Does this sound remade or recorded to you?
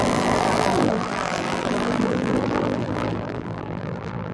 remade